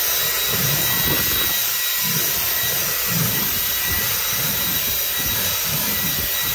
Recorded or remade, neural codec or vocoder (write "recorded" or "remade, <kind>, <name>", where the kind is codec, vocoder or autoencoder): remade, vocoder, BigVGAN v2